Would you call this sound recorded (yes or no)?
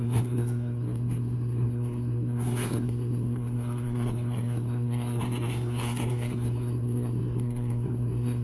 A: no